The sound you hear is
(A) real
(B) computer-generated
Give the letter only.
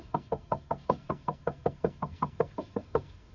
B